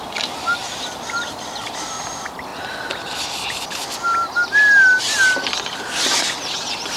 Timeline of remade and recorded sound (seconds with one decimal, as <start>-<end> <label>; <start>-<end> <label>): 0.0-0.6 recorded; 0.6-2.0 remade; 2.0-7.0 recorded